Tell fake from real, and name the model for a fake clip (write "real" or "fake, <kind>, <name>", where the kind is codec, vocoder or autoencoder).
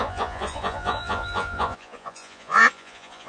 fake, vocoder, Vocos